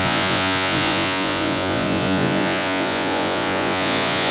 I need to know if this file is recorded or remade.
remade